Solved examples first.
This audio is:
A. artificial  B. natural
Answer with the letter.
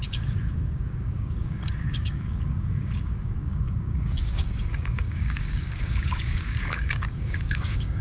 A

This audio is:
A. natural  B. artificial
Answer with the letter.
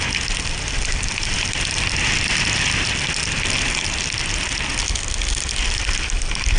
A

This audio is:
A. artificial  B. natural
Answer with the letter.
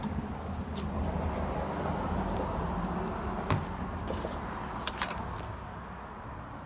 B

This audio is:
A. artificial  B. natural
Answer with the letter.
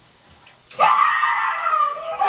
A